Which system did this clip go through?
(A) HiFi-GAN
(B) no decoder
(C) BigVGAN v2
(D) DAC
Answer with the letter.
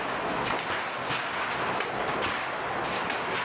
B